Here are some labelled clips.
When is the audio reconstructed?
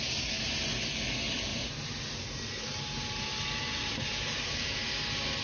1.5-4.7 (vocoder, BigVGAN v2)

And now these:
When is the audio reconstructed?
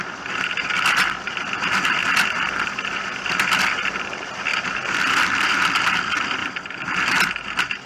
none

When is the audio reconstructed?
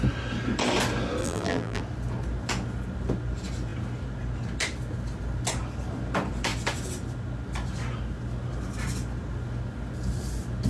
1.2-1.8 (vocoder, BigVGAN v2)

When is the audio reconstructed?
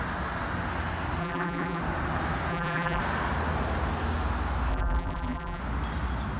1.2-1.8 (vocoder, BigVGAN v2); 2.5-3.0; 4.7-5.6